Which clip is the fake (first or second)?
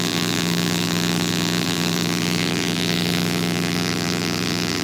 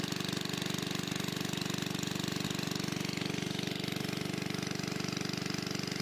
first